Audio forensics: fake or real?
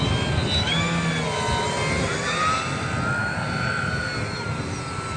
real